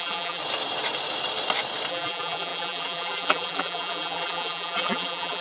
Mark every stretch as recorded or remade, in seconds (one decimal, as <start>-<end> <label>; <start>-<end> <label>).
0.0-0.4 remade; 0.4-1.9 recorded; 1.9-5.4 remade